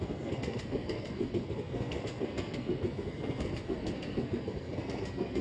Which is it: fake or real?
fake